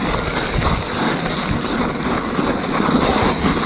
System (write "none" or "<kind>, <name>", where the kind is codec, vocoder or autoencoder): none